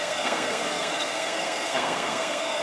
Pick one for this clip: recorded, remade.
remade